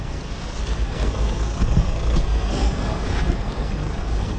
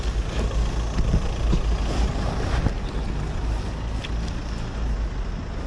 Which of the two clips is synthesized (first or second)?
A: first